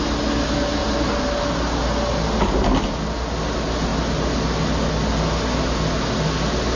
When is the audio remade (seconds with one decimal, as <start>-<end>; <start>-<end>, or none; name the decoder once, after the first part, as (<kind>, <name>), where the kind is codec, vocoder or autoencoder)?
none